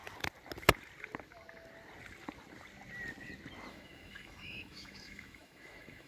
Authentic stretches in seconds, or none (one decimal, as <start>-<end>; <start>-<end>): 0.0-3.7